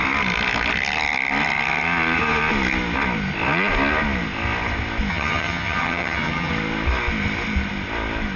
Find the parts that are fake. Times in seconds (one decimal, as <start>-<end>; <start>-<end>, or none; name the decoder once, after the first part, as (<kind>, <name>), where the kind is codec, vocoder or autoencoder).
5.1-6.5 (vocoder, HiFi-GAN)